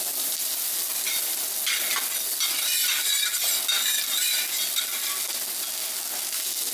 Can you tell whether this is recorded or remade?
recorded